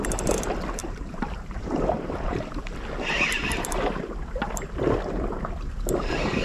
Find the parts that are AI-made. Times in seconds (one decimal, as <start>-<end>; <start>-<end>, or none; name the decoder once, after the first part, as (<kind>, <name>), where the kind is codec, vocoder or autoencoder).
0.8-2.6 (vocoder, BigVGAN v2)

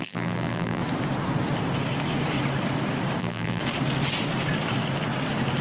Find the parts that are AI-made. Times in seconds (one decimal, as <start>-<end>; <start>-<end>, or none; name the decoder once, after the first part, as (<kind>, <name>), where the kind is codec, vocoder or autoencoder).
0.0-0.8 (vocoder, BigVGAN v2); 3.2-3.6

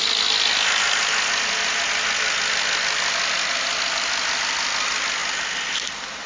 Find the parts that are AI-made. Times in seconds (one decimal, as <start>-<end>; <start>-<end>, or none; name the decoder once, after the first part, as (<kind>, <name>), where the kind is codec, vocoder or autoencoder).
none

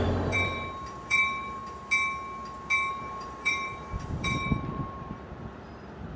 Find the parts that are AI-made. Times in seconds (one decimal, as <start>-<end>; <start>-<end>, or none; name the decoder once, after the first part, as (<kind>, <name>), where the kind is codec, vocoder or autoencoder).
0.0-1.6 (vocoder, BigVGAN v2); 2.9-6.2